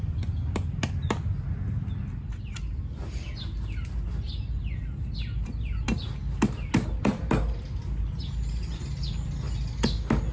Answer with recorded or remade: recorded